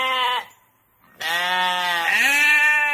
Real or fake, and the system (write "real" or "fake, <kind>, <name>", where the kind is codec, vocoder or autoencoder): real